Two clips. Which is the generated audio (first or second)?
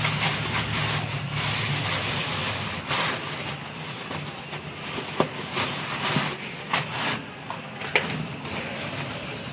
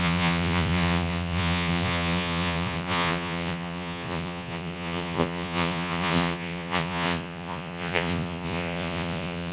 second